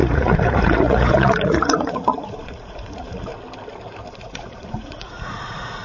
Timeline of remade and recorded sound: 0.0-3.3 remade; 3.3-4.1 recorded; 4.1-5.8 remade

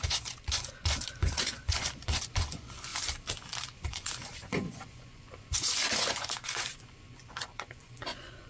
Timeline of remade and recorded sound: 0.0-2.9 remade; 2.9-3.6 recorded; 3.6-8.5 remade

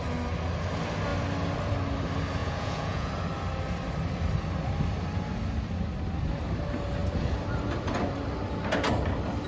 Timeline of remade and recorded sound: 0.0-2.4 recorded; 2.4-3.1 remade; 3.1-9.5 recorded

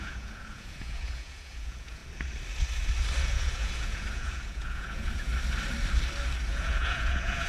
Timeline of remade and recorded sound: 0.0-2.0 remade; 2.0-3.2 recorded; 3.2-5.3 remade; 5.3-6.5 recorded; 6.5-7.5 remade